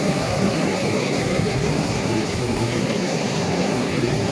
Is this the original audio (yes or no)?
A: no